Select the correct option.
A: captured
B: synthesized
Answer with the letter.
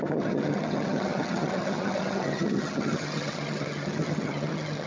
B